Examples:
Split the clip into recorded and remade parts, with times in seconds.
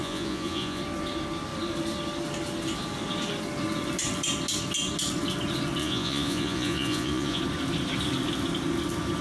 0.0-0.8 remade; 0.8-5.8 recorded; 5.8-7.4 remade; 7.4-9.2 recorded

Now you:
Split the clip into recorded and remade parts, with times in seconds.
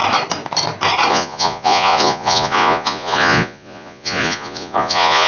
0.0-1.1 recorded; 1.1-5.3 remade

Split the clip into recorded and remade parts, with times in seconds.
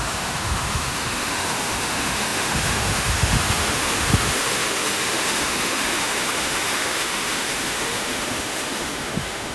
0.0-9.5 remade